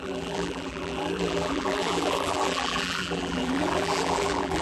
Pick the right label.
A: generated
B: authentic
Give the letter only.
A